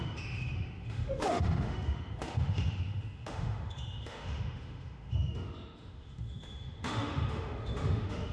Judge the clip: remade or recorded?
remade